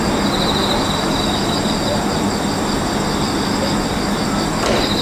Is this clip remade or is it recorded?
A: recorded